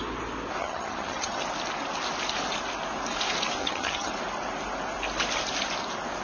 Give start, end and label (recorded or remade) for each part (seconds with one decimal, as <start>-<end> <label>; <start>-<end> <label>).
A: 0.0-0.6 recorded; 0.6-1.4 remade; 1.4-3.6 recorded; 3.6-4.1 remade; 4.1-6.2 recorded